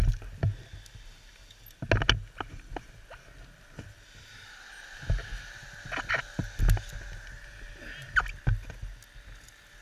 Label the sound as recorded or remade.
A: recorded